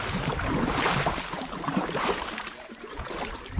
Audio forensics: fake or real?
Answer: fake